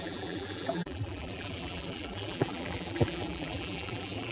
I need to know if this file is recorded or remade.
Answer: remade